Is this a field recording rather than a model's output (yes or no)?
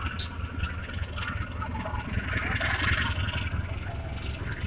yes